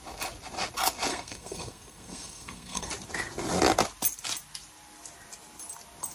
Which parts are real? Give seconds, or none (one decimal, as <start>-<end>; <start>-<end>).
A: 0.0-1.1; 2.9-6.1